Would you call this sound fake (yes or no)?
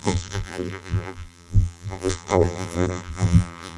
yes